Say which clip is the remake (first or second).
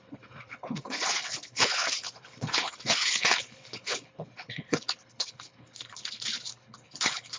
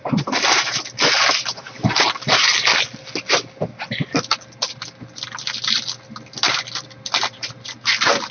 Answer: first